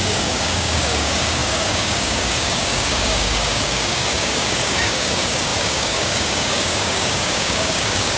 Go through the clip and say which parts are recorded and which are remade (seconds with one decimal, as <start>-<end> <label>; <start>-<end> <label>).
0.0-8.2 remade